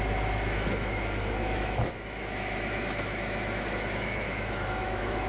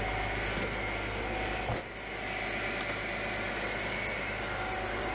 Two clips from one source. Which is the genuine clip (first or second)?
second